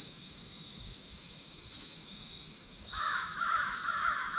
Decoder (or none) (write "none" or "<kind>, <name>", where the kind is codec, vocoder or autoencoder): autoencoder, DAC-VAE